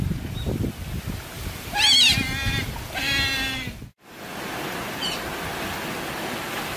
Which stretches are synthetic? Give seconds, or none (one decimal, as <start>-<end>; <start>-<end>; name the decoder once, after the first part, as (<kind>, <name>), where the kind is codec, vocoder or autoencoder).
none